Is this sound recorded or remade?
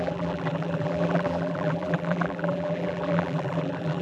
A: remade